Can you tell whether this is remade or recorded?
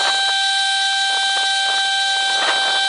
recorded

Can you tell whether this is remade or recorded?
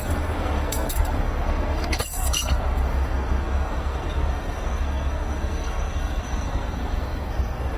remade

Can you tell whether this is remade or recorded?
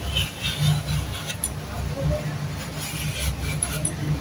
recorded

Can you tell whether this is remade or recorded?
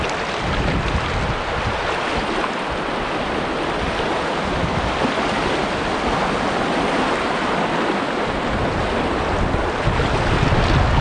recorded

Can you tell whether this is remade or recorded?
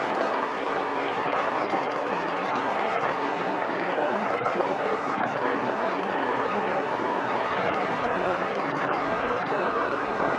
remade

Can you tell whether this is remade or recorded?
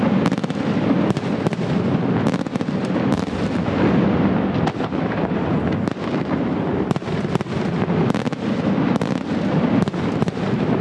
recorded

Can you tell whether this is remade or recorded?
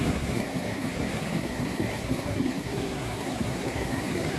remade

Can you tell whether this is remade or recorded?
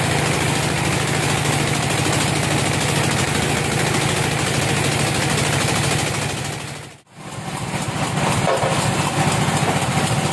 recorded